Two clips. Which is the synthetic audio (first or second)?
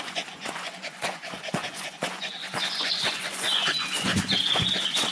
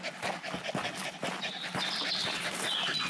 first